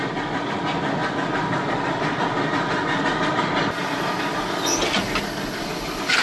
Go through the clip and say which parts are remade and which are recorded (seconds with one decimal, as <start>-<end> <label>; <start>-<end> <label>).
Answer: 0.0-6.2 recorded